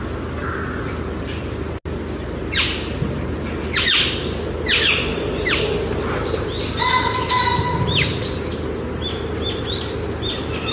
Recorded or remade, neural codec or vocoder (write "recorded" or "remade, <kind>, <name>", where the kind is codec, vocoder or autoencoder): recorded